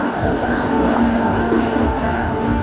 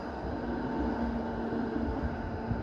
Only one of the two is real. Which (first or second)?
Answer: second